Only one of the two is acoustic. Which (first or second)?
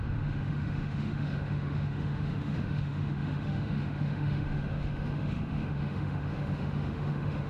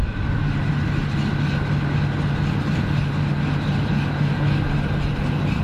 second